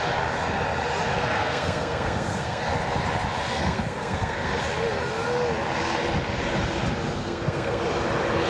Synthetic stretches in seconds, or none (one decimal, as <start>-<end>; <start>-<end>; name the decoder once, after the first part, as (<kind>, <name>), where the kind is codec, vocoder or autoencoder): 1.1-2.6 (codec, SNAC); 3.5-4.6; 7.2-7.8